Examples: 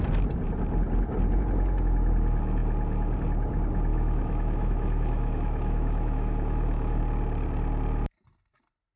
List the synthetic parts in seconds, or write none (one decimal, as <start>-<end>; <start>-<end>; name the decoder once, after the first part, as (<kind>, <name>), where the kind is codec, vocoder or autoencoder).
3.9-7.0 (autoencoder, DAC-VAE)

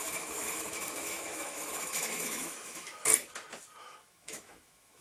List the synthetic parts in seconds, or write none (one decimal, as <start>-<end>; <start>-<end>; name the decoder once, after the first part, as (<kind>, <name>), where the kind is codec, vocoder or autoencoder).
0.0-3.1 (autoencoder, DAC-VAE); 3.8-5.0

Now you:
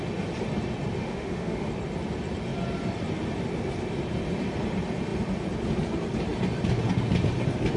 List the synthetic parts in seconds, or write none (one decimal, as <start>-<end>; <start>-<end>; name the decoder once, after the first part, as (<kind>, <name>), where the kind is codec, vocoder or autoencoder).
1.0-1.7 (autoencoder, DAC-VAE)

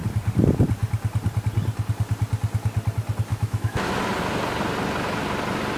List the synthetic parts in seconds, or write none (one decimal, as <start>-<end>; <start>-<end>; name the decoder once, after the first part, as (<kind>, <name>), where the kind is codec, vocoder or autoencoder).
3.3-4.0 (autoencoder, DAC-VAE)